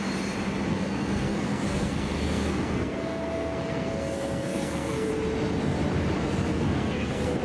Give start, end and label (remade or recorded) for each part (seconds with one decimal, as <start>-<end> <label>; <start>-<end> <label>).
0.0-0.7 recorded; 0.7-5.1 remade; 5.1-6.5 recorded; 6.5-7.4 remade